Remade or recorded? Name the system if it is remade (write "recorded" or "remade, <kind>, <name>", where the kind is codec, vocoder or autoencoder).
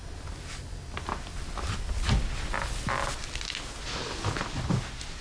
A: recorded